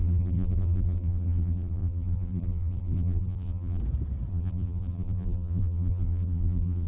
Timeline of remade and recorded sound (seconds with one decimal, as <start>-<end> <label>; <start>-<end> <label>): 0.0-3.8 remade; 3.8-4.3 recorded; 4.3-6.9 remade